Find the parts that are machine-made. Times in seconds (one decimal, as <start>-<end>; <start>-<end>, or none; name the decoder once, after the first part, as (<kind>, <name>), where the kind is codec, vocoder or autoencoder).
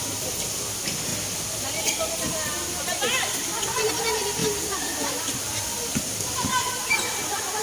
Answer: none